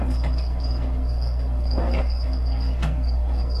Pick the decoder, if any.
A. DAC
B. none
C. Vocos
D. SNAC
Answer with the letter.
D